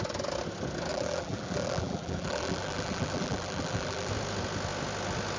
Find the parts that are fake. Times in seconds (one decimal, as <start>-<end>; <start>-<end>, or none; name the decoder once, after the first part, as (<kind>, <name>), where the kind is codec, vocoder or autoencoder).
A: 0.9-4.1 (vocoder, BigVGAN v2)